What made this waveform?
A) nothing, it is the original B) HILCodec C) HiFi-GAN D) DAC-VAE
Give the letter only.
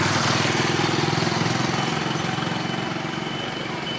A